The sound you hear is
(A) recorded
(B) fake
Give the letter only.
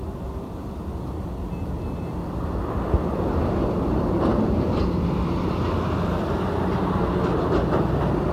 A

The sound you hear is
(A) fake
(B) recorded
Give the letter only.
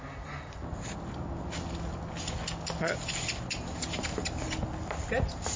B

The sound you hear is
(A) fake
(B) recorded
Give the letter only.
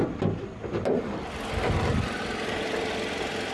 B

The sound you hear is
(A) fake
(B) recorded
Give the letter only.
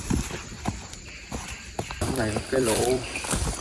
A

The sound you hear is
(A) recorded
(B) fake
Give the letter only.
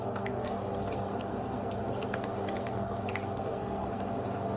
B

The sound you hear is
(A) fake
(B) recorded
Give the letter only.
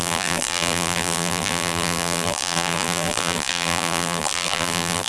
A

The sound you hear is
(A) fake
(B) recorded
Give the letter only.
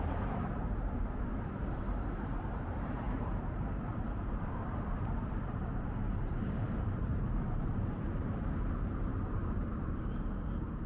A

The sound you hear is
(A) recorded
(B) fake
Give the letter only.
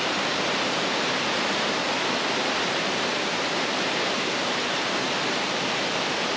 B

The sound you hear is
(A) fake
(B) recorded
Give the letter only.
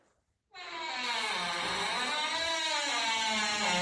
B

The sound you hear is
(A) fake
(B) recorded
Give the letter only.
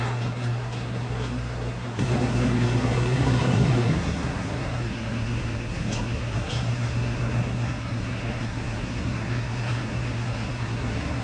A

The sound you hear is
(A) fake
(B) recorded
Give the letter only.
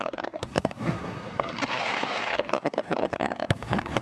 A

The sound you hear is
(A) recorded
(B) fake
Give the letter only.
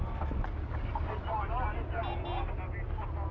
A